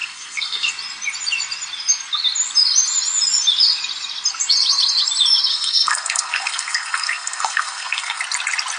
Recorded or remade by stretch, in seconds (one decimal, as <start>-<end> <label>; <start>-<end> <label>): 0.0-0.7 remade; 0.7-5.5 recorded; 5.5-8.2 remade; 8.2-8.8 recorded